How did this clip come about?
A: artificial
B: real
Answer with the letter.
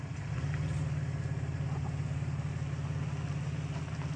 B